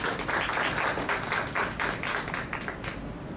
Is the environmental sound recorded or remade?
recorded